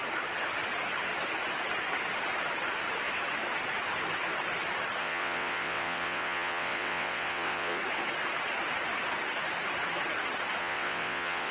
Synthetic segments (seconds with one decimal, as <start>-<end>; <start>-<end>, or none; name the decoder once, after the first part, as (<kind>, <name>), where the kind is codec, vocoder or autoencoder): 5.0-7.8 (vocoder, WaveNeXt); 10.6-11.5